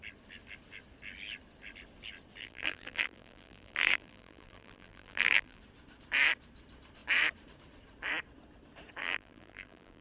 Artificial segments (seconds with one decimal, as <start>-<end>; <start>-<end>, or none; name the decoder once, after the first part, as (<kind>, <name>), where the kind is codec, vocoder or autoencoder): 2.4-5.6 (vocoder, BigVGAN v2); 9.0-10.0